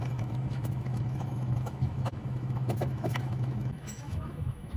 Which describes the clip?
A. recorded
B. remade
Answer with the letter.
B